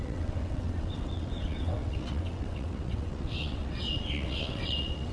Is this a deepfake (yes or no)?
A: yes